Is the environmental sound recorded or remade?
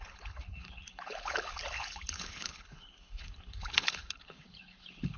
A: remade